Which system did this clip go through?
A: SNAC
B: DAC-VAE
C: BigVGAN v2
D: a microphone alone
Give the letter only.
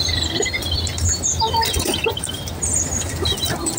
D